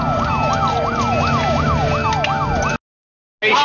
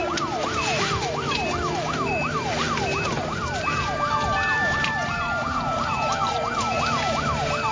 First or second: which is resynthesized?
second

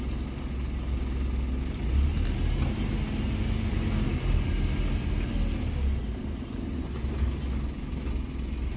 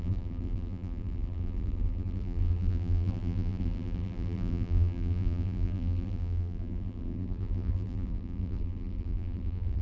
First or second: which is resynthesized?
second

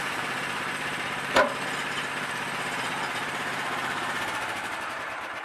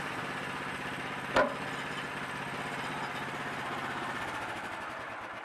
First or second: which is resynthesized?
first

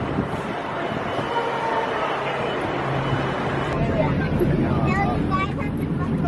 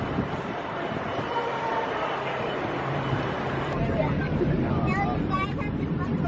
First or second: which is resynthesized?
second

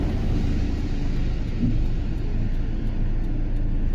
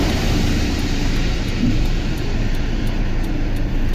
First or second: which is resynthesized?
second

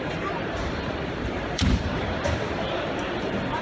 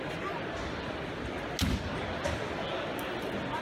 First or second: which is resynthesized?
first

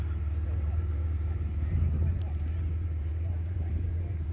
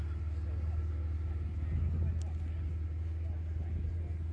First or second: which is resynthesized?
first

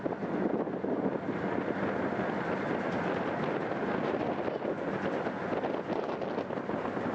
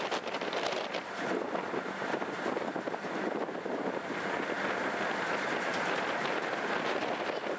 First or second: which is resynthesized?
second